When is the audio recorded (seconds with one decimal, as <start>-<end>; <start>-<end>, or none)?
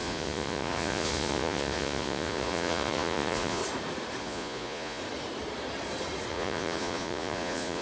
3.6-4.2; 5.0-6.3